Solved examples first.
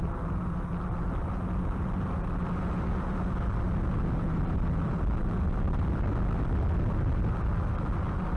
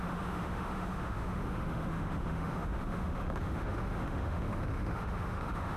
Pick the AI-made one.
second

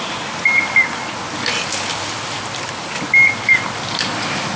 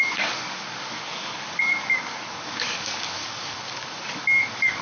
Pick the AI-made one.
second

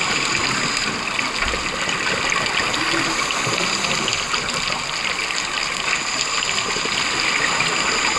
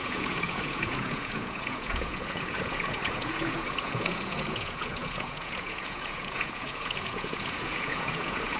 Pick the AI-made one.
second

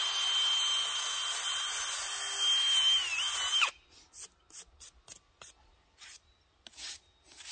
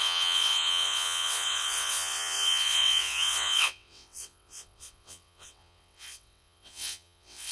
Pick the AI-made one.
second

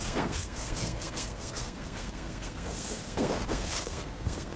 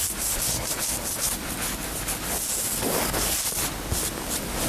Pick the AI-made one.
first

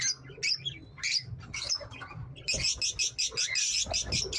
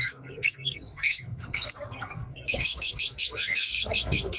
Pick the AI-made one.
second